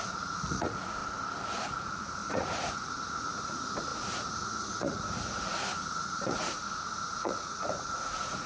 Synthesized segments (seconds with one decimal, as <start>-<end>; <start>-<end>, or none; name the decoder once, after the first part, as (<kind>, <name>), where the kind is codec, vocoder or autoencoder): 0.0-1.0 (vocoder, Vocos); 1.5-8.5